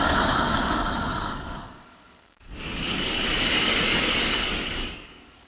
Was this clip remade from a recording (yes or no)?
yes